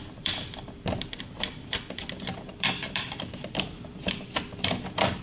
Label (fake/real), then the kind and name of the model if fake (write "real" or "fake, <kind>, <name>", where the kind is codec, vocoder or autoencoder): fake, vocoder, BigVGAN v2